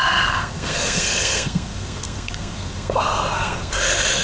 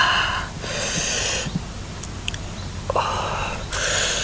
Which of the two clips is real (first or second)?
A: second